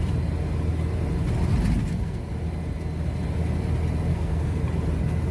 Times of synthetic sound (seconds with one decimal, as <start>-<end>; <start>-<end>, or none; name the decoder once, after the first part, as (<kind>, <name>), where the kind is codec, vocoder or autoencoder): 1.8-2.3 (codec, SNAC); 4.1-4.6